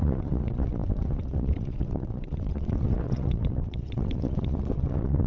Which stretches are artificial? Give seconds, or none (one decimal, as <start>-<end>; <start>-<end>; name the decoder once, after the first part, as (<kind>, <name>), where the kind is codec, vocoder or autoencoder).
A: 0.0-5.3 (vocoder, WaveNeXt)